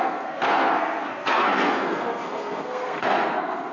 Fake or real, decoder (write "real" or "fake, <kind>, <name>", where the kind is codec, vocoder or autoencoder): fake, codec, SNAC